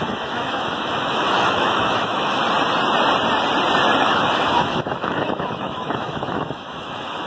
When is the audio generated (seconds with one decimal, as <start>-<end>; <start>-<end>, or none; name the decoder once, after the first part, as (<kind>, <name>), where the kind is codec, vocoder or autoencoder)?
0.0-2.4 (autoencoder, DAC-VAE); 4.0-7.3